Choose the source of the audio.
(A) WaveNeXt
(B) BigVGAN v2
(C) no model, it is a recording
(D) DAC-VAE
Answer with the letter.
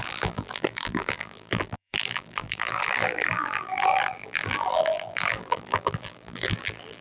B